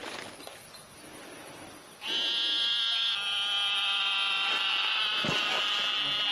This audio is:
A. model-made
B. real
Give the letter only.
B